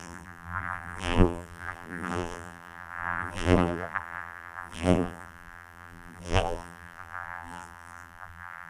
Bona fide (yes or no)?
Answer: no